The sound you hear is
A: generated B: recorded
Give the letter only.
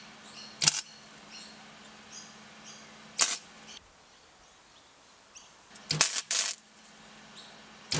B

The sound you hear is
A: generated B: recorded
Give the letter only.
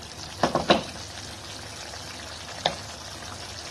B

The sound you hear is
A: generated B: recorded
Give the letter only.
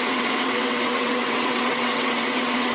A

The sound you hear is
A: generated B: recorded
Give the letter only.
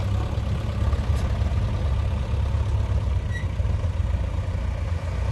B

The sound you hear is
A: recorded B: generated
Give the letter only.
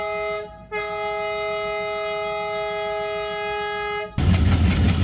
A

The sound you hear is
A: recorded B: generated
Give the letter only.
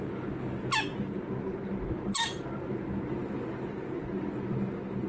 A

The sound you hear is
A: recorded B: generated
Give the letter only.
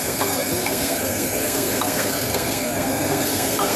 B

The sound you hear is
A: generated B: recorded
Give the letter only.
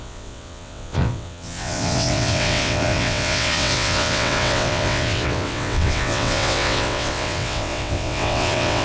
A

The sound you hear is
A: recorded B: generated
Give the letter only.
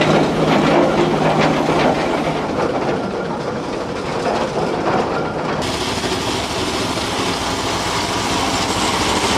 A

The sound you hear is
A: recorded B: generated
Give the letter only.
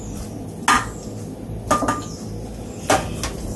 A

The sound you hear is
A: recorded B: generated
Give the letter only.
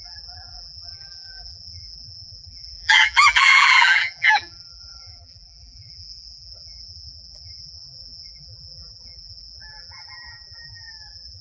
B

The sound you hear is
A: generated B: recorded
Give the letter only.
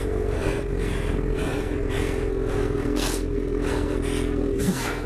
A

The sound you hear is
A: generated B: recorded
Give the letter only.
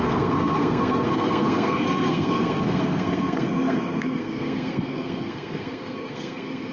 A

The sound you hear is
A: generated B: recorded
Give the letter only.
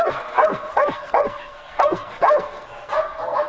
A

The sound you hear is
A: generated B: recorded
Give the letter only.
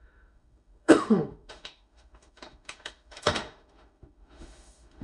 A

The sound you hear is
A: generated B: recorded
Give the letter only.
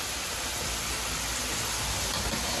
B